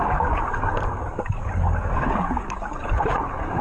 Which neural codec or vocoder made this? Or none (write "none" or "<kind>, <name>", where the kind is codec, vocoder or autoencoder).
codec, DAC